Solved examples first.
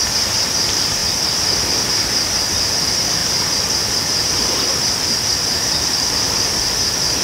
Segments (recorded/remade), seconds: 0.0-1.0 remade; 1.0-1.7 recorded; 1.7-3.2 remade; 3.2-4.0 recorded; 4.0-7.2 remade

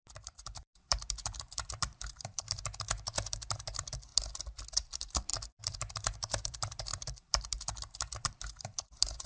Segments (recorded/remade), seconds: 0.0-4.1 remade; 4.1-4.7 recorded; 4.7-9.3 remade

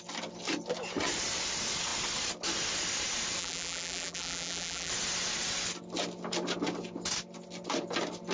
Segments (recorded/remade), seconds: 0.0-3.4 recorded; 3.4-4.9 remade; 4.9-8.3 recorded